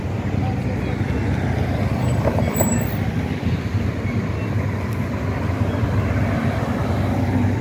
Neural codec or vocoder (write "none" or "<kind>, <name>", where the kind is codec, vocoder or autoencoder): none